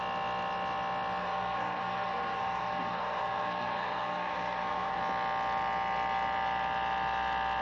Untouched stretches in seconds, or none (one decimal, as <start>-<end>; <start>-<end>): 0.0-1.2; 5.0-7.6